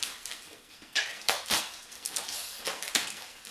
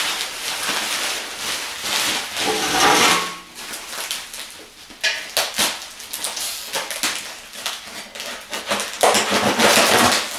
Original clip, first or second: second